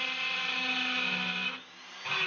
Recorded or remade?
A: recorded